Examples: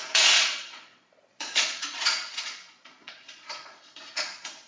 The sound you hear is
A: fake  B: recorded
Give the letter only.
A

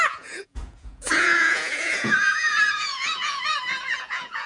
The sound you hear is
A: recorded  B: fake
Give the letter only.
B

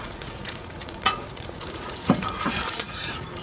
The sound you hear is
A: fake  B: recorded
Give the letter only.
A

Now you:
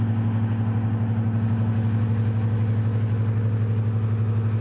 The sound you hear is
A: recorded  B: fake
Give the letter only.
A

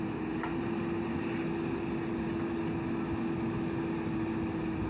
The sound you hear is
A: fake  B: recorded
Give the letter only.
B